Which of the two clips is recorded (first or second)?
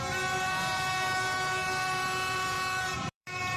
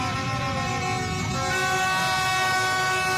second